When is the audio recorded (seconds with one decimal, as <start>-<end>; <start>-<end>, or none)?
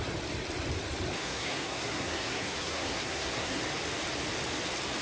0.0-1.2; 3.6-5.0